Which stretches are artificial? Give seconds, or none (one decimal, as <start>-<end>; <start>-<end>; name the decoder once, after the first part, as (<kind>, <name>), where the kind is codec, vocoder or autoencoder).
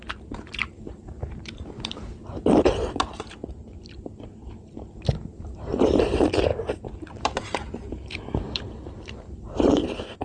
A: 0.0-2.2 (vocoder, BigVGAN v2); 5.3-6.5; 7.2-10.2